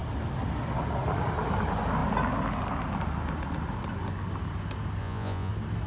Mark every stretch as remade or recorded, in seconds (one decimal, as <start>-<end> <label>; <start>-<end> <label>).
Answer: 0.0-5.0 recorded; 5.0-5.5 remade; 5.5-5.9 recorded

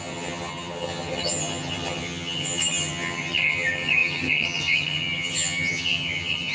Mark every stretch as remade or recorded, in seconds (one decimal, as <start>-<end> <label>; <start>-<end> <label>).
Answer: 0.0-6.5 remade

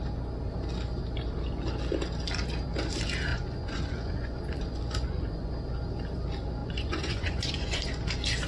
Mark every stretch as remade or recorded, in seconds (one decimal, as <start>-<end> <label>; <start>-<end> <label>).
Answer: 0.0-3.3 recorded; 3.3-5.5 remade; 5.5-6.6 recorded; 6.6-8.0 remade; 8.0-8.5 recorded

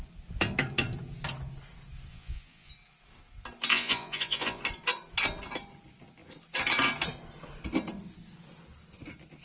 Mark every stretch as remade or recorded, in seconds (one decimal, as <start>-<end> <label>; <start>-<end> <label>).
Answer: 0.0-2.1 recorded; 2.1-2.7 remade; 2.7-3.7 recorded; 3.7-4.6 remade; 4.6-9.4 recorded

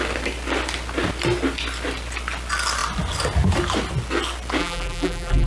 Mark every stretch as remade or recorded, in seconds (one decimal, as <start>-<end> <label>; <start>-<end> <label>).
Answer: 0.0-4.6 recorded; 4.6-5.5 remade

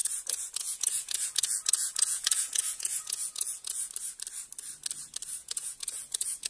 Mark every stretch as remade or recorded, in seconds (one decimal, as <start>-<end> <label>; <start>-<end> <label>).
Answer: 0.0-3.9 remade; 3.9-5.4 recorded; 5.4-6.5 remade